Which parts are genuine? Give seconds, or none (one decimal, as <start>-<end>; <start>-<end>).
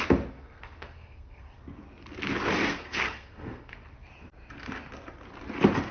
0.0-0.4; 1.6-2.7; 3.7-5.9